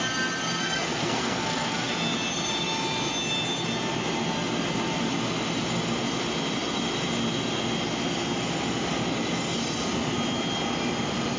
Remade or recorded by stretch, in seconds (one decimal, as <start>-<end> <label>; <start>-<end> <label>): 0.0-0.6 recorded; 0.6-1.9 remade; 1.9-11.4 recorded